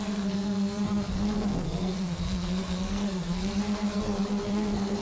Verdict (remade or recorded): remade